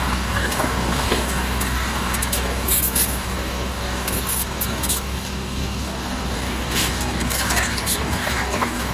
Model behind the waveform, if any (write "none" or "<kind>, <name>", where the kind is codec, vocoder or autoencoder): codec, DAC